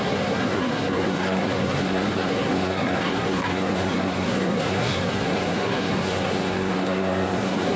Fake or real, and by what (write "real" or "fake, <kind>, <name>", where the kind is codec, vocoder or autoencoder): fake, codec, SNAC